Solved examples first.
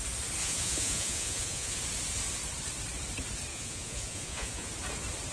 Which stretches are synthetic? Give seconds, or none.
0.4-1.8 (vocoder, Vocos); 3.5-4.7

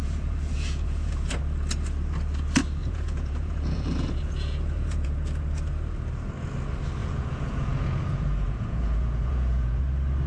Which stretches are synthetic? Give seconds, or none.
0.0-1.4 (vocoder, Vocos); 2.8-5.7; 7.0-9.8

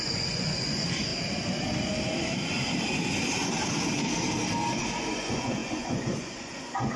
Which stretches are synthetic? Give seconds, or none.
0.0-1.1 (vocoder, Vocos); 5.1-7.0